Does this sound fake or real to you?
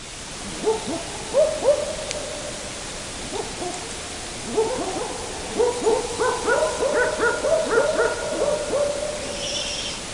real